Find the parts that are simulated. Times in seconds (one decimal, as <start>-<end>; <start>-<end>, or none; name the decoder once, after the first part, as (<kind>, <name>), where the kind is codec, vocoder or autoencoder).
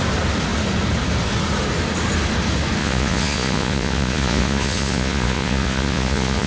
2.8-6.5 (vocoder, Vocos)